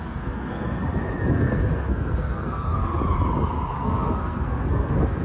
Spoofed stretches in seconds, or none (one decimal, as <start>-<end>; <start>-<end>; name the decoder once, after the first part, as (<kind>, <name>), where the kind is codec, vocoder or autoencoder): 0.0-0.8 (codec, SNAC); 1.3-3.0; 3.7-5.2